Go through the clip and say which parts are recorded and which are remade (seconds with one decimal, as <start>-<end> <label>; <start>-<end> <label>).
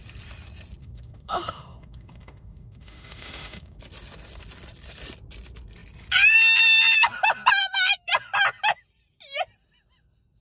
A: 0.0-0.8 recorded; 0.8-3.8 remade; 3.8-10.4 recorded